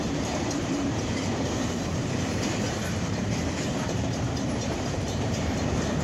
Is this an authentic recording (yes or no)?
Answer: no